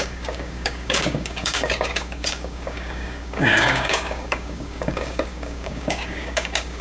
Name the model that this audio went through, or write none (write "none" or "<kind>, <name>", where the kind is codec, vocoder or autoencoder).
codec, DAC